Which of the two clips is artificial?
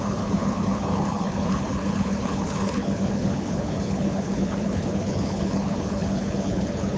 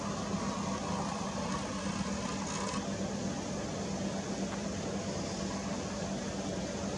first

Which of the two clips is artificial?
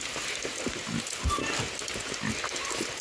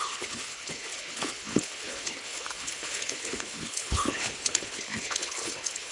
second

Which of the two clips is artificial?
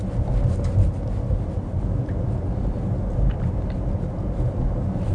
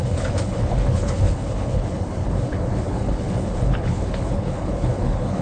second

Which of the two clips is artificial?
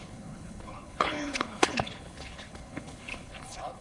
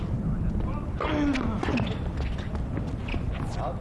first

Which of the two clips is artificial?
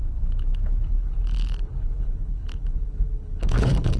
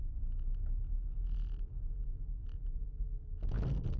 first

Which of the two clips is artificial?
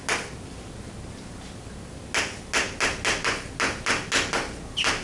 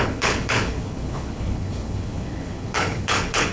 second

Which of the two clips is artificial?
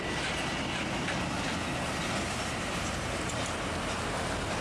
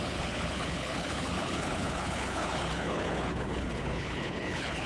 second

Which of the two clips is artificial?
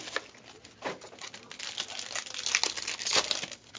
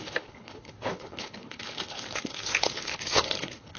second